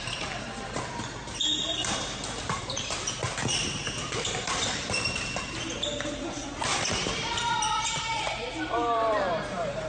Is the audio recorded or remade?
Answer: remade